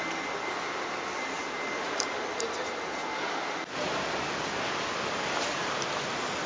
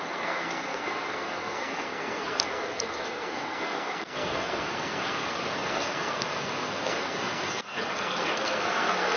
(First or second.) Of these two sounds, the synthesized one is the second